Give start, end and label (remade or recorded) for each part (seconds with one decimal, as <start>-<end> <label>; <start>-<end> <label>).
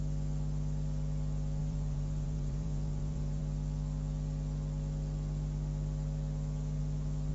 0.0-1.6 recorded; 1.6-3.4 remade; 3.4-7.3 recorded